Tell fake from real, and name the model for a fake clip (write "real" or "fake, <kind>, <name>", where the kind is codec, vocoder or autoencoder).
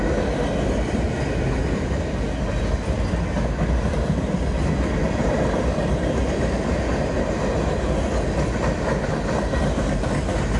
real